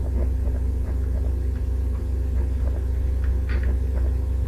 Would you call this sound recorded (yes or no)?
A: yes